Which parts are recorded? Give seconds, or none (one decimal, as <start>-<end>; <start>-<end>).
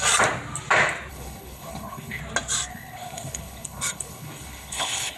0.0-1.1; 2.2-2.7